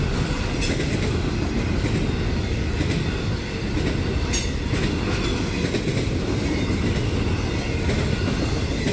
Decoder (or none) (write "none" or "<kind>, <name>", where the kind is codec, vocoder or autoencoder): none